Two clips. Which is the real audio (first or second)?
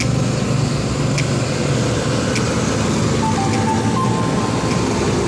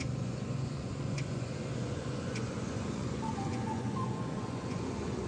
first